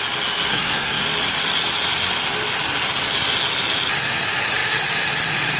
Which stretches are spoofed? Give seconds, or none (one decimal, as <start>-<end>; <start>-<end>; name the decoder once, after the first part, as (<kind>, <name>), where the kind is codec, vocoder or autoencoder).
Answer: 0.5-1.0 (codec, SNAC)